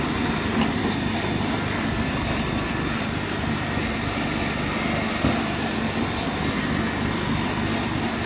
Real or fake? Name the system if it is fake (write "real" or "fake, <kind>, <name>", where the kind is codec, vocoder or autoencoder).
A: real